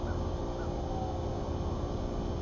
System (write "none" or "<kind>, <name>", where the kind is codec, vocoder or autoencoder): none